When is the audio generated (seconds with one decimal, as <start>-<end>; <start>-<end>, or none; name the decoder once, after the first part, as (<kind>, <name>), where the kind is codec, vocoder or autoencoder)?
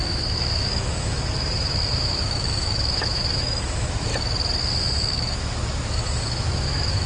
0.0-4.1 (autoencoder, DAC-VAE); 4.8-7.1